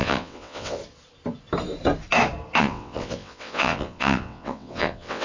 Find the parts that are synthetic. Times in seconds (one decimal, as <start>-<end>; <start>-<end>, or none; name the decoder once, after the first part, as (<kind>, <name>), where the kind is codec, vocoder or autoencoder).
0.0-0.8 (vocoder, WaveNeXt); 2.6-5.2